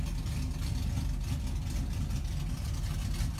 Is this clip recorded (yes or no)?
yes